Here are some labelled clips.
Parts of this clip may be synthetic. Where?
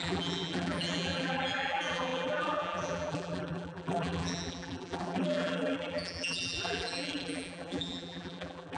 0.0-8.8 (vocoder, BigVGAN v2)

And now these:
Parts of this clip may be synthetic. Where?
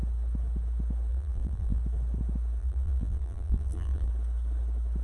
1.1-1.8 (vocoder, BigVGAN v2); 2.6-4.1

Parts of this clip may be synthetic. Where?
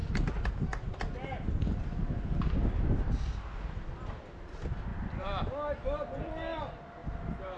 none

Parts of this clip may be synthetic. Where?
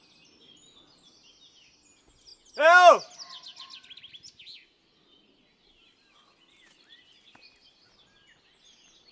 none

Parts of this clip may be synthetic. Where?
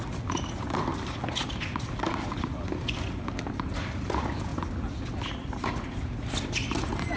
none